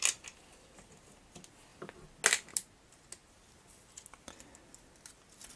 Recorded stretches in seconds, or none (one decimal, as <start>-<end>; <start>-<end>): 0.0-5.6